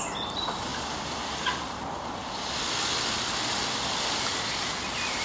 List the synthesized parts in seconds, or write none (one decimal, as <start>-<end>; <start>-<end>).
none

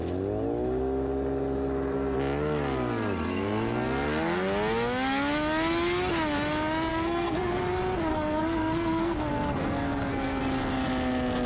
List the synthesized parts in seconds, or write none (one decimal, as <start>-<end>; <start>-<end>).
6.9-7.6; 8.1-10.4

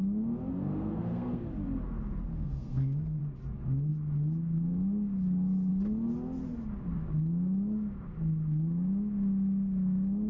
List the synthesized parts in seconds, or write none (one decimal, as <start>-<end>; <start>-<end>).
0.5-1.4; 2.3-3.2

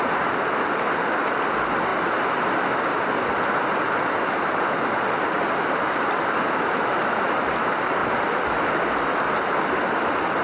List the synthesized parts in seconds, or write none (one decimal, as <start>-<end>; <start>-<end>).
none

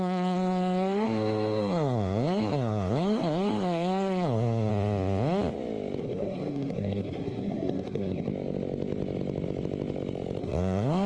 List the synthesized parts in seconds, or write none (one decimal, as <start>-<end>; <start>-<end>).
0.0-4.7; 6.0-8.3; 10.4-11.1

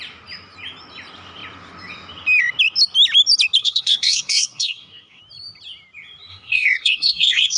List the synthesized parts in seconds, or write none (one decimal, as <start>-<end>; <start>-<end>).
3.6-5.2; 6.3-7.6

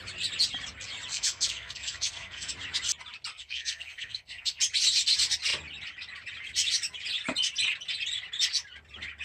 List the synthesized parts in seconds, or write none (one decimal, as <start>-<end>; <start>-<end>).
1.1-2.5; 3.3-4.6